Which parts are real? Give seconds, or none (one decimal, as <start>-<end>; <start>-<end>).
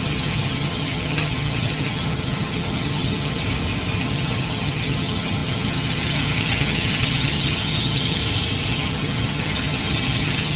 3.4-4.0; 8.2-8.7